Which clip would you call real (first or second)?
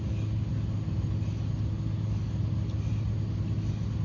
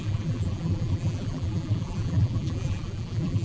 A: first